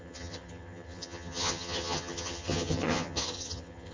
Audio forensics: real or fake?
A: fake